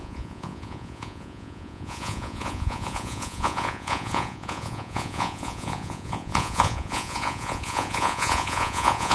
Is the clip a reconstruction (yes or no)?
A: yes